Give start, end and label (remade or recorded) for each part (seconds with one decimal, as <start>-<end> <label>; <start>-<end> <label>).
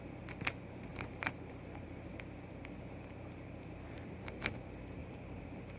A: 0.0-0.9 recorded; 0.9-2.1 remade; 2.1-2.6 recorded; 2.6-4.5 remade; 4.5-5.0 recorded; 5.0-5.8 remade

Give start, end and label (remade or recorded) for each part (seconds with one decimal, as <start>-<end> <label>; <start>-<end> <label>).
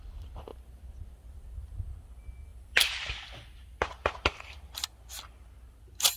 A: 0.0-6.2 recorded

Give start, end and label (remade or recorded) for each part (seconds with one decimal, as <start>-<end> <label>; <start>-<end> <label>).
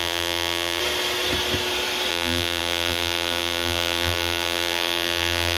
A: 0.0-0.8 remade; 0.8-2.1 recorded; 2.1-5.6 remade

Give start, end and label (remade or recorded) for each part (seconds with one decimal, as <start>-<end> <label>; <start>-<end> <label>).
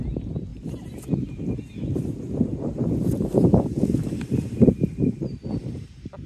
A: 0.0-0.5 recorded; 0.5-1.5 remade; 1.5-2.5 recorded; 2.5-6.3 remade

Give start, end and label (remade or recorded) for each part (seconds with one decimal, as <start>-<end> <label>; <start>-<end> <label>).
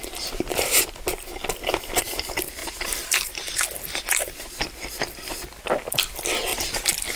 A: 0.0-2.6 recorded; 2.6-4.7 remade; 4.7-6.5 recorded; 6.5-7.2 remade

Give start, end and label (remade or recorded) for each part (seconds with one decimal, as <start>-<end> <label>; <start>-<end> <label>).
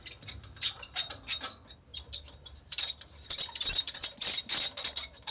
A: 0.0-1.9 recorded; 1.9-4.4 remade; 4.4-5.3 recorded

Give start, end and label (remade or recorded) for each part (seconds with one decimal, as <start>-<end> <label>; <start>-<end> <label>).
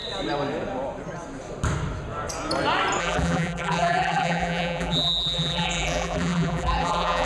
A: 0.0-3.0 recorded; 3.0-7.3 remade